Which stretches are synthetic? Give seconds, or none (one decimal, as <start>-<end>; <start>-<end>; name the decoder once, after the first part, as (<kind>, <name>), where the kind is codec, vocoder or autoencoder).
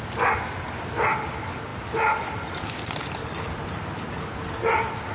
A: none